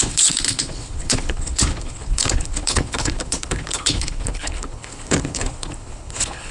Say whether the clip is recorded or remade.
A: remade